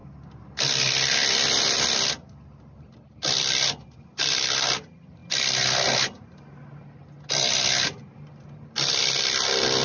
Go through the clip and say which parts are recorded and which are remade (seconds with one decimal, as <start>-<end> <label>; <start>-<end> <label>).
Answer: 0.0-2.3 recorded; 2.3-5.2 remade; 5.2-9.0 recorded; 9.0-9.8 remade